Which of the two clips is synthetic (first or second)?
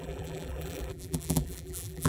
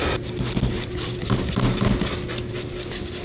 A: first